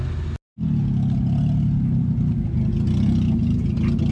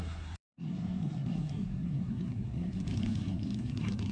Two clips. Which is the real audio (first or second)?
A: first